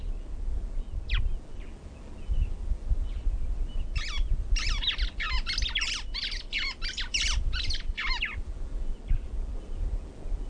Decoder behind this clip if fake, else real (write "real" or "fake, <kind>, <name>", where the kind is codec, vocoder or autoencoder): real